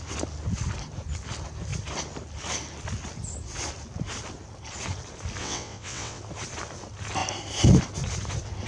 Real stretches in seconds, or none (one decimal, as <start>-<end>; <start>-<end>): 0.0-5.4; 6.2-8.7